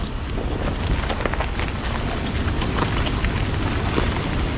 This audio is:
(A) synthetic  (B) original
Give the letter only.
B